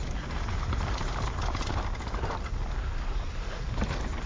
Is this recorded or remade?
recorded